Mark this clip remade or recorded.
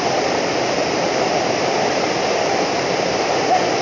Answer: remade